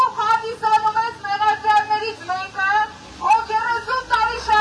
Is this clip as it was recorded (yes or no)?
yes